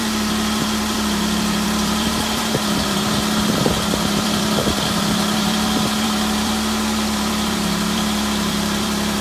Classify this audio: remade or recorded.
remade